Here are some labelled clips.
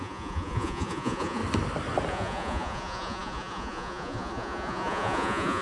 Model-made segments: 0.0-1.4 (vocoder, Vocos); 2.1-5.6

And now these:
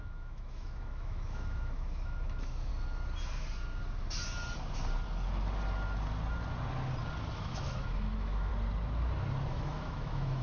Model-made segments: 0.0-2.7 (autoencoder, DAC-VAE); 7.3-8.5; 9.5-10.4